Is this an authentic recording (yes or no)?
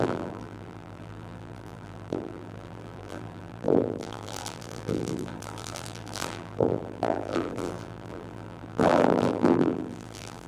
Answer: no